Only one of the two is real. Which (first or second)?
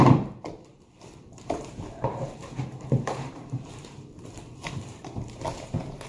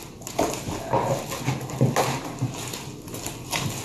second